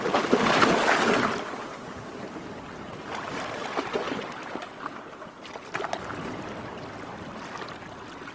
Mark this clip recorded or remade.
recorded